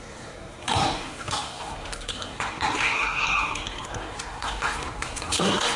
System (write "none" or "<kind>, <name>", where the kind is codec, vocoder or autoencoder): codec, SNAC